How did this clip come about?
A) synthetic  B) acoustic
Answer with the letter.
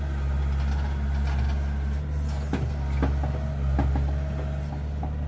B